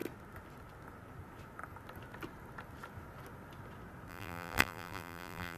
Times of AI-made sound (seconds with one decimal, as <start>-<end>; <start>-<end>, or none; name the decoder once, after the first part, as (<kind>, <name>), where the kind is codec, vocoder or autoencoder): 4.1-5.6 (vocoder, BigVGAN v2)